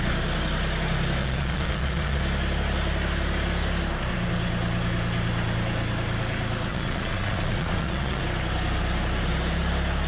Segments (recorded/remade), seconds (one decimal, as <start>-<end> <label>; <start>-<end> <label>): 0.0-1.2 recorded; 1.2-2.2 remade; 2.2-6.7 recorded; 6.7-8.2 remade; 8.2-10.1 recorded